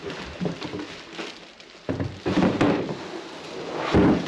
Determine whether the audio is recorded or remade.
recorded